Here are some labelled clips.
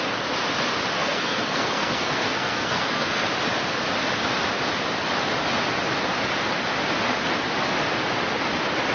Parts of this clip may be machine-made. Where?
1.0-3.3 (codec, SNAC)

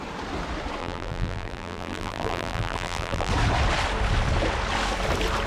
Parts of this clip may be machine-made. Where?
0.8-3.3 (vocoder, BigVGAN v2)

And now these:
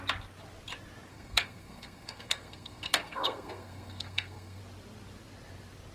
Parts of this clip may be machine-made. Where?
1.1-4.6 (codec, SNAC)